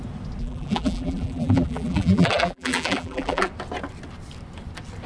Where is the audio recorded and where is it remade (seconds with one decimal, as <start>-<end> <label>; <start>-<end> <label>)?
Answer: 0.0-0.4 recorded; 0.4-3.5 remade; 3.5-5.1 recorded